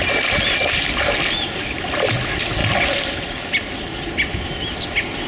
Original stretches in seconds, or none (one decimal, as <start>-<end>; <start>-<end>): 0.0-5.3